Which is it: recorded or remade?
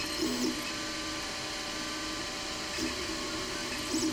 recorded